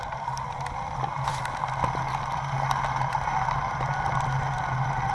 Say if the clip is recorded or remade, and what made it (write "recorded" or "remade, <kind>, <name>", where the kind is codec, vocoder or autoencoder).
recorded